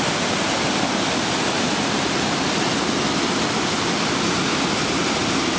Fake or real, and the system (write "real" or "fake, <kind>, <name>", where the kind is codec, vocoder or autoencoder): real